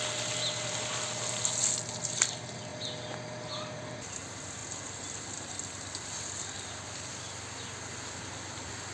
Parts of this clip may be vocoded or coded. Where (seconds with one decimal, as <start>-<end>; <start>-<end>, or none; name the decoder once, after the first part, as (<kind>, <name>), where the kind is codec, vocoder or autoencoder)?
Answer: 4.6-7.1 (vocoder, BigVGAN v2)